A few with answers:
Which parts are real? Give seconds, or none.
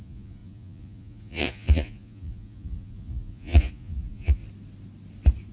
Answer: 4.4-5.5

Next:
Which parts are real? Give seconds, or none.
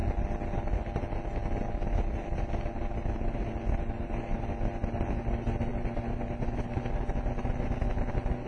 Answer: 0.0-8.5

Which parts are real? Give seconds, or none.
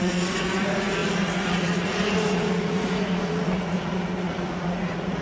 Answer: none